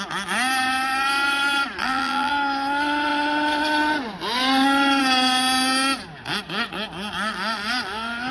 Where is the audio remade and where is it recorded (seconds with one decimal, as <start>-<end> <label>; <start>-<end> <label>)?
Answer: 0.0-1.8 recorded; 1.8-2.3 remade; 2.3-8.3 recorded